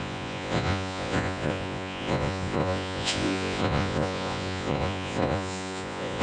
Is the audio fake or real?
fake